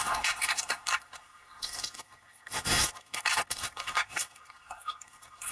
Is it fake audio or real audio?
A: fake